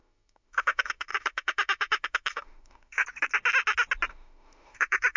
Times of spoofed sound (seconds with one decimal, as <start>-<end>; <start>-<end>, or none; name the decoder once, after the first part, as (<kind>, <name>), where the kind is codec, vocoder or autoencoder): 0.0-3.0 (autoencoder, DAC-VAE); 4.1-5.2